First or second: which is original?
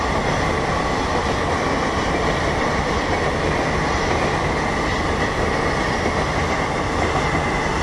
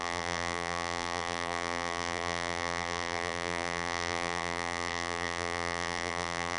first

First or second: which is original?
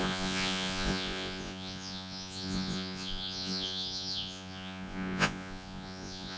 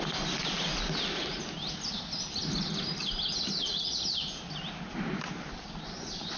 second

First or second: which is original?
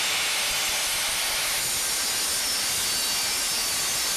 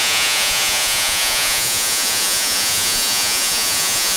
first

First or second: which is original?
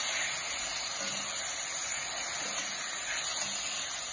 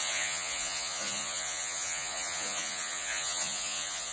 first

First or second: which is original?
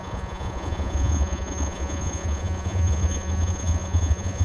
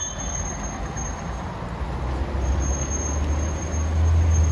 second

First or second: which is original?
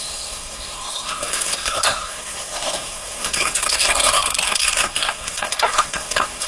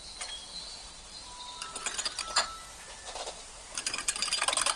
second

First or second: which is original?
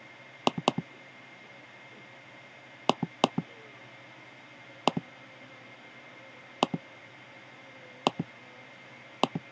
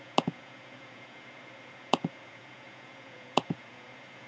first